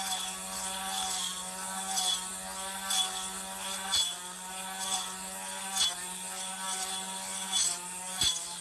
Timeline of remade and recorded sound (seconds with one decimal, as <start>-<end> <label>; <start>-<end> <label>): 0.0-8.6 recorded